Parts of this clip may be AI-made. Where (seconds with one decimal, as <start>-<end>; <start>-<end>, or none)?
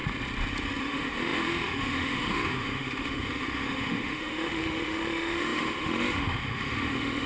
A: 0.8-7.3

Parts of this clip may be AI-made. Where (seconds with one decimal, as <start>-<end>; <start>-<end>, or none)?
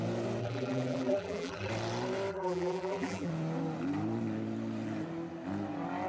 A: 0.4-1.7; 2.3-3.3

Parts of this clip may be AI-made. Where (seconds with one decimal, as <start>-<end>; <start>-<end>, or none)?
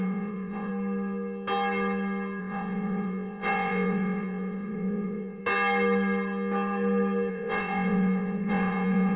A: 0.0-0.7; 2.4-5.4; 7.3-9.2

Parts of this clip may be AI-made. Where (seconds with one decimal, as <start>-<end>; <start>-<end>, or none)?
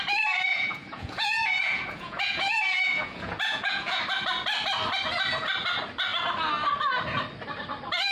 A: 0.5-4.0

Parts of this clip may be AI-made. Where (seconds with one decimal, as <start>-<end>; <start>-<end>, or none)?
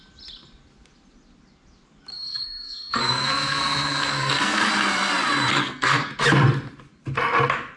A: 2.1-4.7; 5.5-6.1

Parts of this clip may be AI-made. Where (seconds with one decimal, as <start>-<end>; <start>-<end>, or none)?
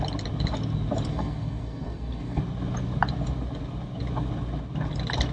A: 1.1-2.4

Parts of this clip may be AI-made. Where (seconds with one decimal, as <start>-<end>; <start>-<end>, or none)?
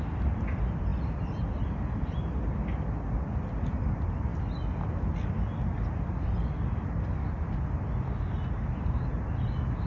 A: none